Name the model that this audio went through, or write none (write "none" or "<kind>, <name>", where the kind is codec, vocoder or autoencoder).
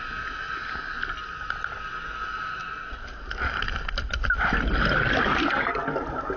none